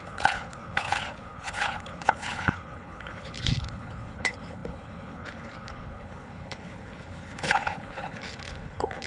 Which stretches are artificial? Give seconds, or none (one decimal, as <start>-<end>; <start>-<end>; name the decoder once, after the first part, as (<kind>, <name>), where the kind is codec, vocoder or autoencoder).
0.0-9.1 (codec, HILCodec)